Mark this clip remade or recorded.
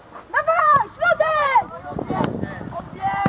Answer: remade